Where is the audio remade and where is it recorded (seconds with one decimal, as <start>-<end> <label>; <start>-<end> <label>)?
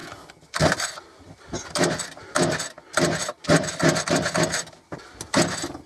0.0-1.7 remade; 1.7-5.9 recorded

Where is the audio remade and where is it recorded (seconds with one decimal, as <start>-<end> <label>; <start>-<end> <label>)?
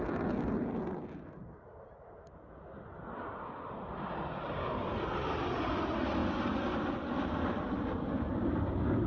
0.0-9.1 recorded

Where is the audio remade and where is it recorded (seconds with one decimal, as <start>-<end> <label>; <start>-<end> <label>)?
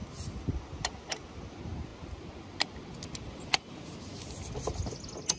0.0-5.4 recorded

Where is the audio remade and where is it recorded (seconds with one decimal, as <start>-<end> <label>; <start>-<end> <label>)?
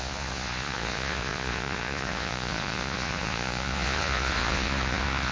0.0-5.3 remade